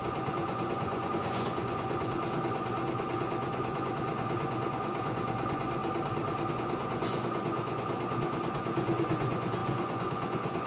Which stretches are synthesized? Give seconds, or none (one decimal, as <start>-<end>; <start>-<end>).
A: 0.0-5.8; 6.5-10.7